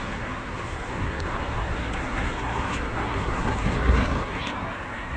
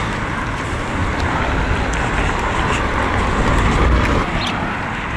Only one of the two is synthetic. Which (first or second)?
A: first